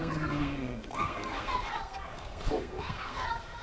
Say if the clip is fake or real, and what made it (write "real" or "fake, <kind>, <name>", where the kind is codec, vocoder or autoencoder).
fake, codec, SNAC